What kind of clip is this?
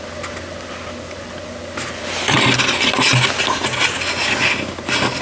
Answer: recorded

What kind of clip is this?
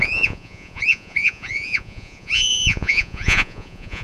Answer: remade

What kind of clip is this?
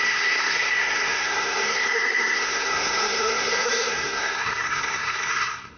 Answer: remade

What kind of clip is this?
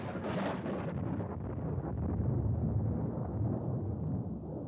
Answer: recorded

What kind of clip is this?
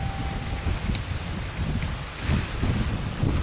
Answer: recorded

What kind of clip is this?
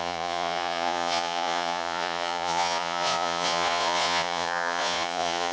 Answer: remade